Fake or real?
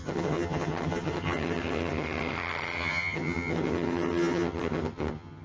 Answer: fake